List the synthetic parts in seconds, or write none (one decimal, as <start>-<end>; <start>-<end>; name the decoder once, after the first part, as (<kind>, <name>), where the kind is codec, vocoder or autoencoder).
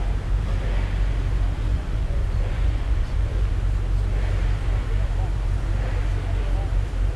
1.7-3.5 (vocoder, Vocos)